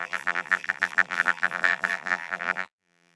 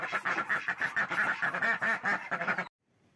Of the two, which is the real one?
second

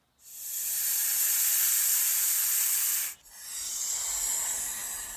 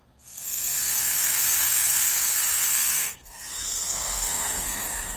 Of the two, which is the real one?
first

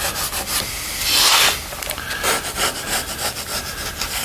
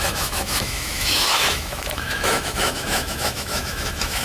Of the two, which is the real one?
first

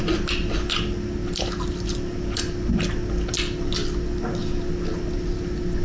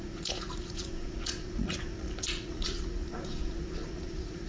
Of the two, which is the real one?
first